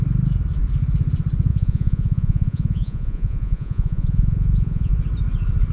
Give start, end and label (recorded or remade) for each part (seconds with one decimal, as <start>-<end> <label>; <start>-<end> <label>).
0.0-1.5 recorded; 1.5-4.9 remade; 4.9-5.7 recorded